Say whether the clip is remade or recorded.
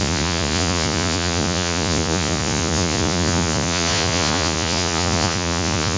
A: remade